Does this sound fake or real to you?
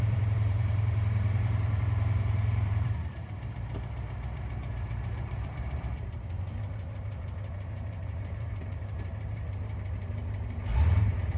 fake